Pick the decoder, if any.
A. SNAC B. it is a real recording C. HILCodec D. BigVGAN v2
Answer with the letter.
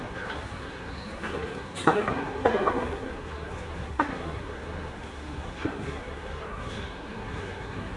A